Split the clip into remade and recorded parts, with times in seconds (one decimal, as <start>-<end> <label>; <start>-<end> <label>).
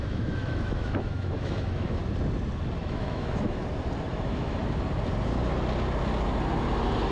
0.0-2.0 remade; 2.0-2.8 recorded; 2.8-3.6 remade; 3.6-4.1 recorded; 4.1-4.6 remade; 4.6-7.1 recorded